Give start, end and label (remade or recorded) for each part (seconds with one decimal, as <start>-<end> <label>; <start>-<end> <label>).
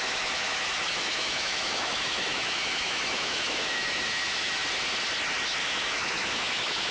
0.0-4.6 remade; 4.6-5.6 recorded; 5.6-6.9 remade